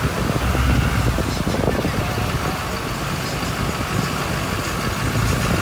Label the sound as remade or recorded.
recorded